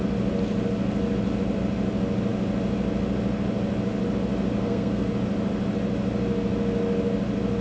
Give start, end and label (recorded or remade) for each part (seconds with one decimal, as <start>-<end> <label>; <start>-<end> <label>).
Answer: 0.0-4.6 recorded; 4.6-5.1 remade; 5.1-7.6 recorded